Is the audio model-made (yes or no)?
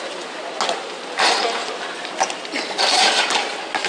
no